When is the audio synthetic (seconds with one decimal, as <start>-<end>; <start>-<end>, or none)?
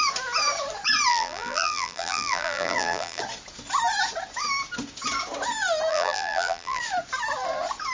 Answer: 1.1-3.2; 5.9-6.8